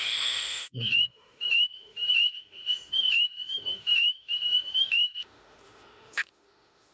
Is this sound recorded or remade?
remade